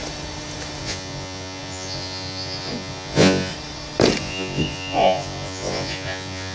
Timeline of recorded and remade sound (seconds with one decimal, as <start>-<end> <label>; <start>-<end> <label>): 0.0-0.8 recorded; 0.8-3.5 remade; 3.5-4.2 recorded; 4.2-6.5 remade